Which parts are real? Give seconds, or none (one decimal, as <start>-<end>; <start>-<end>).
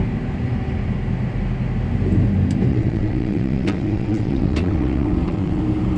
0.0-2.7; 5.6-6.0